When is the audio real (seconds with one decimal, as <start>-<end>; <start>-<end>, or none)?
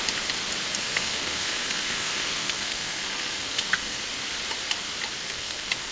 0.0-0.8; 4.0-5.2